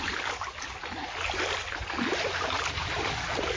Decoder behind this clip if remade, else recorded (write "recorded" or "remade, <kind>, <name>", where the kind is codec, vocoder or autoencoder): recorded